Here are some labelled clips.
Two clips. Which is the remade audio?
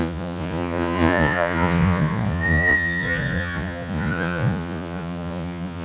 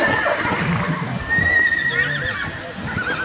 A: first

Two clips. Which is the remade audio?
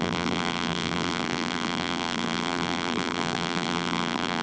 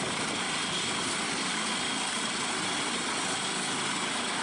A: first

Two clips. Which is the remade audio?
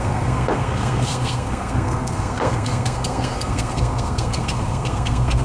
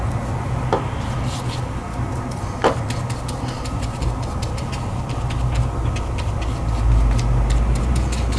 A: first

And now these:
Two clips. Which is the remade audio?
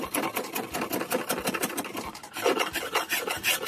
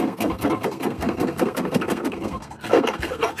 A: second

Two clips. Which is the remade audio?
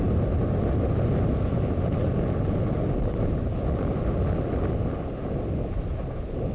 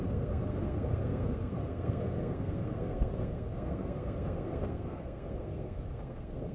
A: second